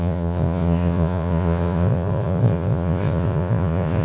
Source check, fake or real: fake